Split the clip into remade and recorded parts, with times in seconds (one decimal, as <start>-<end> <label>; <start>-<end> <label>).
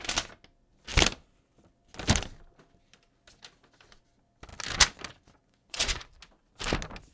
0.0-5.4 recorded; 5.4-6.1 remade; 6.1-7.1 recorded